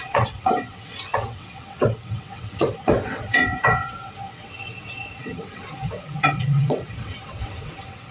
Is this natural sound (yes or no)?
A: no